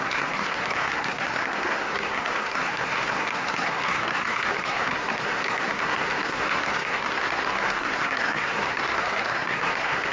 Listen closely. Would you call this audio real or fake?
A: fake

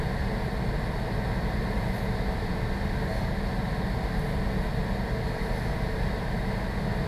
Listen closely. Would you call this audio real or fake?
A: real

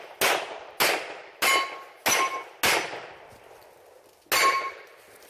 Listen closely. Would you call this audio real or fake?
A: real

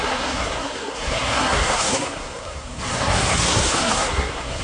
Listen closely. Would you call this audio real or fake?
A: fake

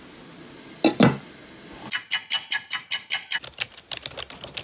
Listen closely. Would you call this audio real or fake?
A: real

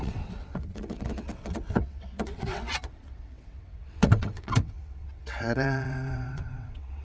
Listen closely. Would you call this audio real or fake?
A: fake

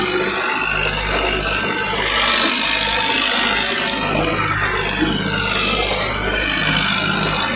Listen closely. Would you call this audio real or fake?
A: real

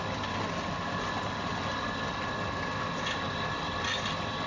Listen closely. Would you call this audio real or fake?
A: real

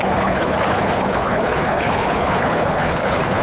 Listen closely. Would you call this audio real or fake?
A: fake